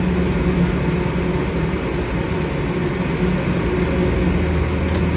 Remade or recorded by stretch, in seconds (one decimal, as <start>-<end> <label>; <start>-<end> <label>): 0.0-5.2 recorded